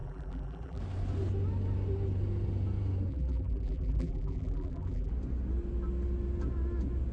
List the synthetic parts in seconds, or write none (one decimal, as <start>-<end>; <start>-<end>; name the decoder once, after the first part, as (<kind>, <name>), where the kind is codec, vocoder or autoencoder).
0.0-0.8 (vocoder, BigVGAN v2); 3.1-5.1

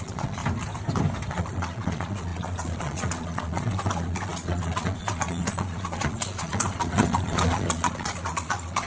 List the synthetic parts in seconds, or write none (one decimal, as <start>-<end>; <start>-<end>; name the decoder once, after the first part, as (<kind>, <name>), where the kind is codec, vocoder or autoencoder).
0.0-0.4 (vocoder, Vocos); 1.3-8.9

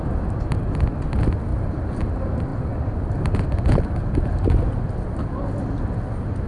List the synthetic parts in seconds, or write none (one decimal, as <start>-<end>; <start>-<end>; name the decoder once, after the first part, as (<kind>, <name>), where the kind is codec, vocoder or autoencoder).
1.5-2.0 (vocoder, BigVGAN v2)